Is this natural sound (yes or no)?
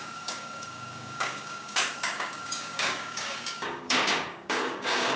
no